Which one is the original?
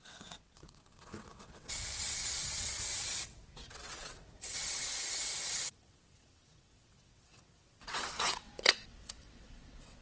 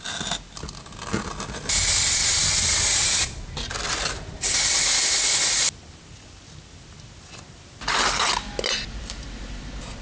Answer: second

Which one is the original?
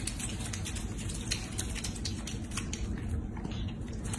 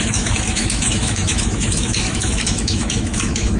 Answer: first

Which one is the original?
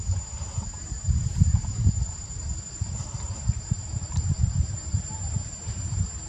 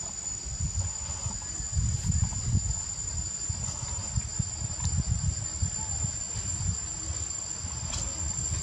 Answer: second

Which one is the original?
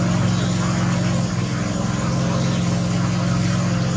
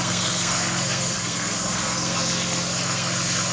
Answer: first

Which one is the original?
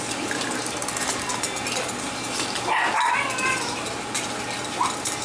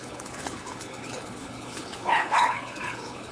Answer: first